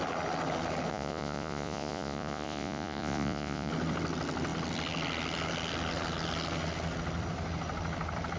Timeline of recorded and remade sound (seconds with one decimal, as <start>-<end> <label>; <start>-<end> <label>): 0.0-0.9 recorded; 0.9-3.7 remade; 3.7-8.4 recorded